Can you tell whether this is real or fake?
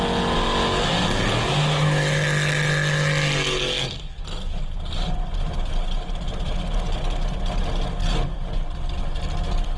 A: real